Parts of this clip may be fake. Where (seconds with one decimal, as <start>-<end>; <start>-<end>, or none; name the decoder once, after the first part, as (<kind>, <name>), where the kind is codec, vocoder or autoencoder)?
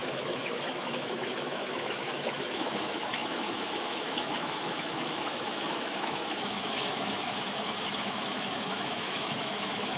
0.0-10.0 (autoencoder, DAC-VAE)